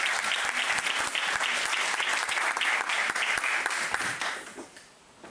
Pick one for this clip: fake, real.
real